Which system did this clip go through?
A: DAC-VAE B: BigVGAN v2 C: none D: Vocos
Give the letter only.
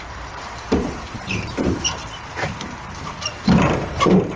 B